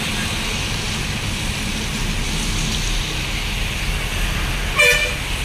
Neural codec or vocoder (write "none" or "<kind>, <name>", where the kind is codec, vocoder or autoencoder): none